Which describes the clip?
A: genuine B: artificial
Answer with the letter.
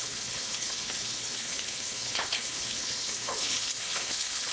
B